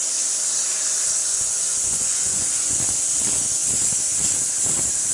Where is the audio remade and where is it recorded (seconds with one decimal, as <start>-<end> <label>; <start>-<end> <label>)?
0.0-1.2 recorded; 1.2-2.8 remade; 2.8-5.1 recorded